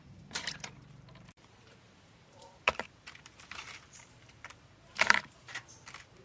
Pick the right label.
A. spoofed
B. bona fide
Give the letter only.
A